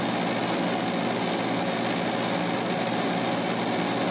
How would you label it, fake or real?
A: real